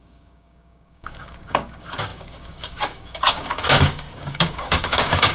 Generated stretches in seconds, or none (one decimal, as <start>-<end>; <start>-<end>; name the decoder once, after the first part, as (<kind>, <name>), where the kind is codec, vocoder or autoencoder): 0.0-5.3 (codec, DAC)